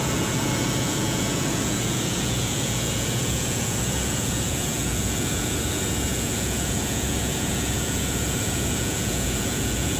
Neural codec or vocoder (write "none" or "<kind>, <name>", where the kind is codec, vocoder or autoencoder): vocoder, Vocos